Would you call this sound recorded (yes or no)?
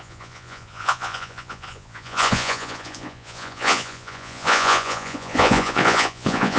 no